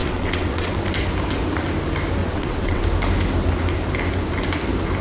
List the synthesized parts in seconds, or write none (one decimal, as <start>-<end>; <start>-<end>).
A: 0.0-0.8; 2.2-2.8